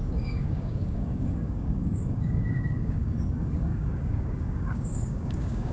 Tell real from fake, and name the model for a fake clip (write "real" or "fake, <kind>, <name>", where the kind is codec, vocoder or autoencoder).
fake, codec, DAC